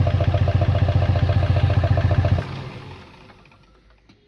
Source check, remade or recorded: recorded